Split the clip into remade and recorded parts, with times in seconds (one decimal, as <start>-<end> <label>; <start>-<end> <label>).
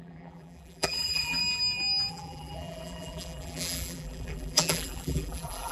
0.0-1.4 remade; 1.4-2.1 recorded; 2.1-5.7 remade